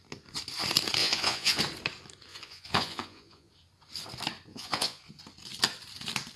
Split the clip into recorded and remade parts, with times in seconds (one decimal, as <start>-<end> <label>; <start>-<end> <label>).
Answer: 0.0-1.0 recorded; 1.0-1.6 remade; 1.6-2.3 recorded; 2.3-3.5 remade; 3.5-4.5 recorded; 4.5-5.0 remade; 5.0-6.4 recorded